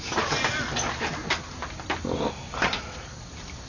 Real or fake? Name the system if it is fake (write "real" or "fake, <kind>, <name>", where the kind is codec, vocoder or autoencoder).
real